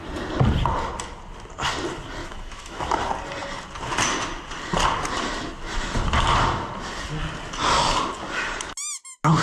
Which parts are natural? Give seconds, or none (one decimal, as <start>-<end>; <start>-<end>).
0.0-2.2; 2.8-9.4